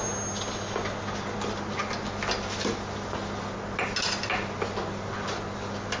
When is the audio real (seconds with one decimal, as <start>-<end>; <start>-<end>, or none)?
0.0-6.0